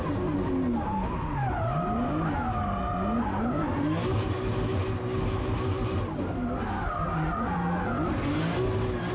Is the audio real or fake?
real